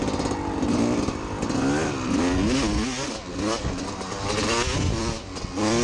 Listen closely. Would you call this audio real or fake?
real